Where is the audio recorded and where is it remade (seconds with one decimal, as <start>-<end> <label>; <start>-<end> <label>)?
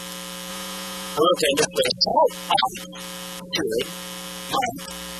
0.0-0.5 recorded; 0.5-1.6 remade; 1.6-5.2 recorded